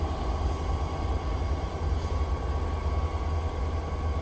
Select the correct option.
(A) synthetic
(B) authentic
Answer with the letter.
B